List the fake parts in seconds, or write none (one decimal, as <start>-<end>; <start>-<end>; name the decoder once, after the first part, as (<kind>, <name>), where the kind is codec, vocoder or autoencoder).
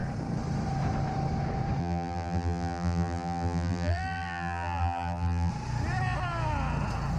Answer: 1.8-5.5 (vocoder, BigVGAN v2)